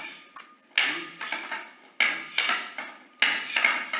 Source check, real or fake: real